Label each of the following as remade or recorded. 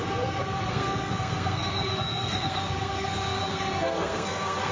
remade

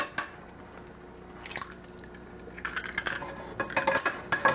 recorded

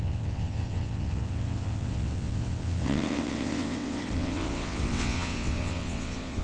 remade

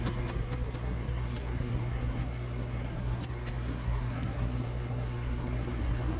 remade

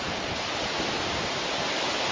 recorded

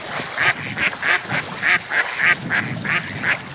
recorded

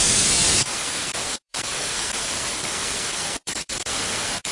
remade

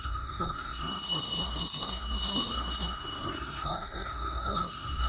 remade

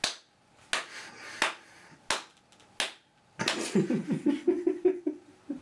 recorded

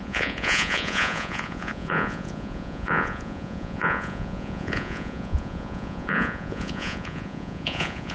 remade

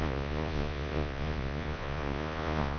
remade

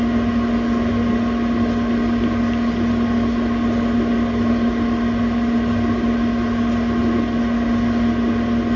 recorded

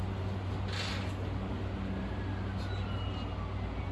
recorded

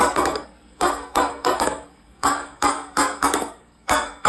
remade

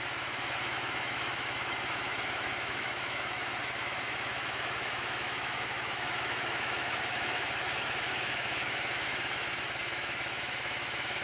remade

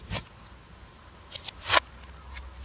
recorded